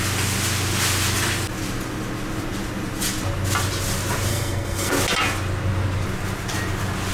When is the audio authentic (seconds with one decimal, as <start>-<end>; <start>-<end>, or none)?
0.0-4.3; 4.9-7.1

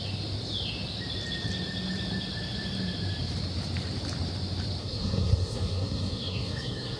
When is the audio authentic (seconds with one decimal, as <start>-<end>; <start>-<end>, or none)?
0.0-4.8

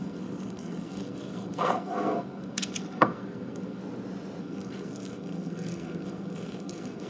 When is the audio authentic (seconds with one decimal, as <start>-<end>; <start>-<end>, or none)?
3.8-4.4

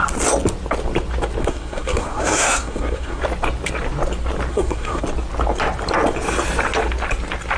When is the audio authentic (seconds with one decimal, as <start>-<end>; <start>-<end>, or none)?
0.0-1.4; 3.2-4.5; 5.0-7.6

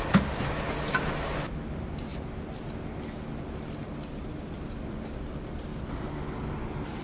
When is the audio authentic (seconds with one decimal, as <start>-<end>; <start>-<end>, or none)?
0.0-7.0

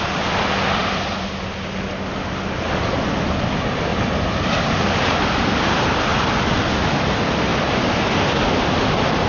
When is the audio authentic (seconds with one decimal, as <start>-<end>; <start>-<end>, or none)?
0.0-9.3

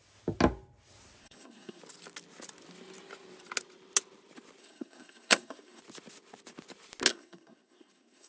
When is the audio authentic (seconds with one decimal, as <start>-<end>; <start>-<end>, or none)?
0.0-1.2; 1.8-4.6; 5.8-7.1